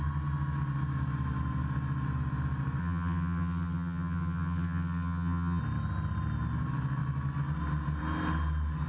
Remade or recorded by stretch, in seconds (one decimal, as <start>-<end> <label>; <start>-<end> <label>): 0.0-2.8 recorded; 2.8-5.6 remade; 5.6-8.9 recorded